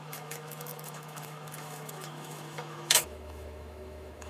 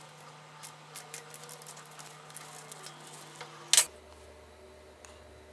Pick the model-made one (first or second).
first